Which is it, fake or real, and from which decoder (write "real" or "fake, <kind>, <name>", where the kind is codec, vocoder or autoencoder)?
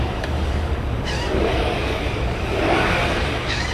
fake, codec, DAC